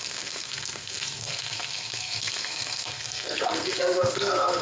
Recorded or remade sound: remade